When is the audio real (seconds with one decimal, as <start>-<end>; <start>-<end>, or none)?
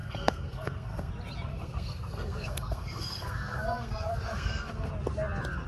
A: 1.1-1.5; 4.9-5.7